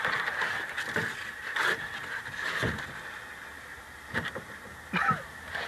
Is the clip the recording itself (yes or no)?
yes